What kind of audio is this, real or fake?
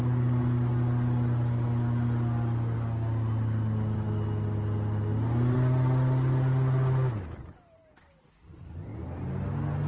real